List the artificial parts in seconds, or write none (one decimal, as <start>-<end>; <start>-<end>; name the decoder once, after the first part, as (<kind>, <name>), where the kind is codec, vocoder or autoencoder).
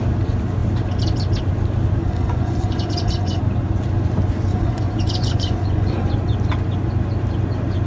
2.0-3.4 (vocoder, Vocos); 4.5-6.1